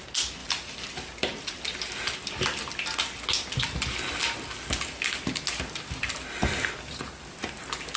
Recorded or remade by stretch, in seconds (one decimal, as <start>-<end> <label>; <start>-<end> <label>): 0.0-8.0 recorded